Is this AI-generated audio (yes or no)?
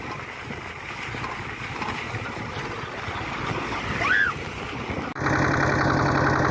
no